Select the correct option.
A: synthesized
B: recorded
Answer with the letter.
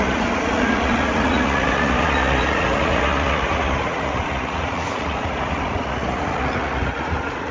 A